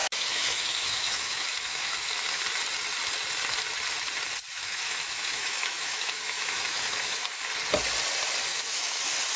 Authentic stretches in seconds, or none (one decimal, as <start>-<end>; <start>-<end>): 2.4-4.5; 7.4-8.5; 9.0-9.4